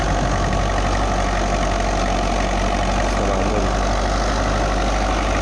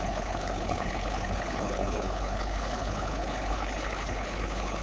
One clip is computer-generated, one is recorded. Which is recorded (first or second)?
first